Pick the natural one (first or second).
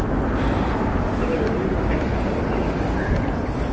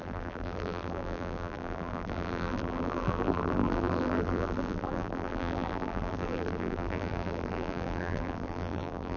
first